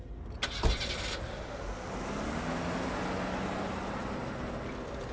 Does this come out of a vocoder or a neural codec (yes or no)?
no